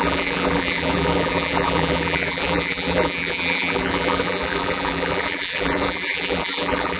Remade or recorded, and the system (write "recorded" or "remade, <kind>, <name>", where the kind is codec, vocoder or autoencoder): remade, vocoder, BigVGAN v2